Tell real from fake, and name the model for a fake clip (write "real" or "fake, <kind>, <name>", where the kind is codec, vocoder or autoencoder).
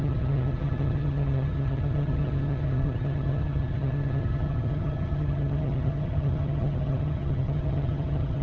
fake, vocoder, HiFi-GAN